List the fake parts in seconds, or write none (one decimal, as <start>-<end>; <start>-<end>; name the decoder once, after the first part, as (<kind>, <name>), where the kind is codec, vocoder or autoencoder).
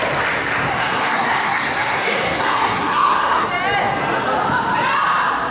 0.7-3.5 (codec, SNAC)